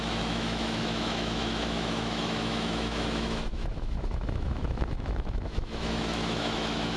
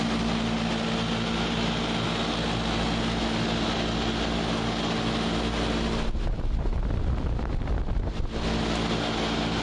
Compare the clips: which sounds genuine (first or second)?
second